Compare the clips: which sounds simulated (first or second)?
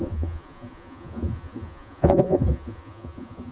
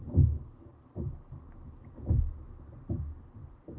first